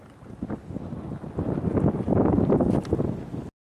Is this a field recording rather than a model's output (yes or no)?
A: yes